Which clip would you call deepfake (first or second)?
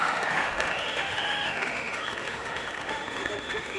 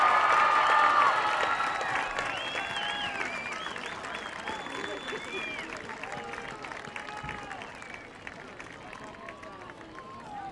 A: first